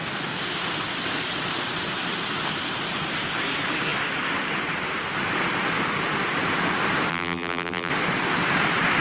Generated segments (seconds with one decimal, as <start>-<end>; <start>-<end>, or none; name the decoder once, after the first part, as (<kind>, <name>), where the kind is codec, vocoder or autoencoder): 7.1-7.9 (vocoder, BigVGAN v2)